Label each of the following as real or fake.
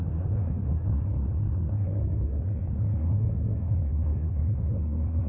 fake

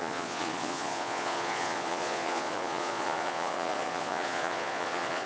fake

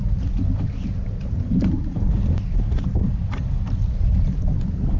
real